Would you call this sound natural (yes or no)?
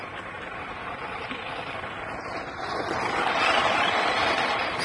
yes